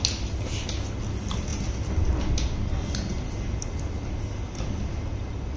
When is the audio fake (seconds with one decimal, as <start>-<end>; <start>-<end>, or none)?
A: none